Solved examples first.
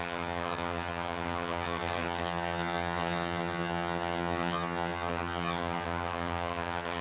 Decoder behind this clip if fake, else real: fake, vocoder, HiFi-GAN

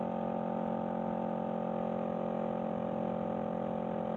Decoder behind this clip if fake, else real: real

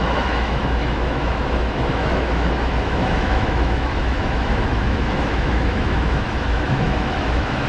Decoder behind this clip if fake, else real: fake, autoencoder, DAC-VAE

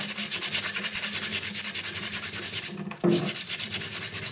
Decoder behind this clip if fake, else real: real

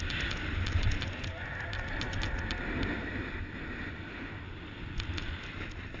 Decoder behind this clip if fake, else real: real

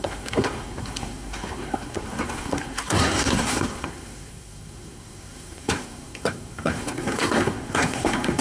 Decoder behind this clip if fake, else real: fake, codec, SNAC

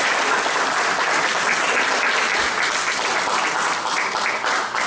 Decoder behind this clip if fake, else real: real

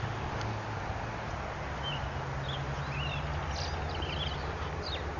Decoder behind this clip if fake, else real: real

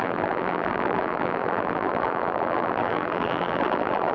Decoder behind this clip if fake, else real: fake, vocoder, BigVGAN v2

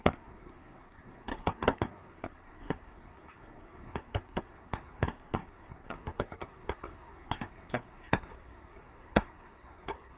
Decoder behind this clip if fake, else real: fake, codec, SNAC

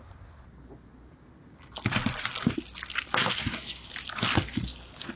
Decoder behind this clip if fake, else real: real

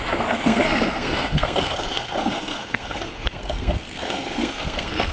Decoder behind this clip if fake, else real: fake, codec, SNAC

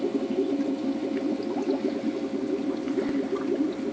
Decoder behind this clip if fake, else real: real